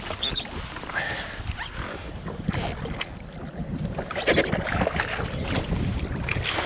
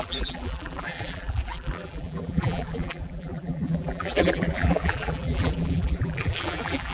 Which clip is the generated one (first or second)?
second